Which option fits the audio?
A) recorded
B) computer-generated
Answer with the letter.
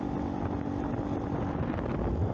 A